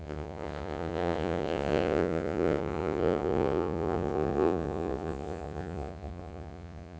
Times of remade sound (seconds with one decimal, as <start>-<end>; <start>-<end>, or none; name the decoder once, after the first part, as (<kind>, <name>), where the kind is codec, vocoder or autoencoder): 0.0-7.0 (vocoder, Vocos)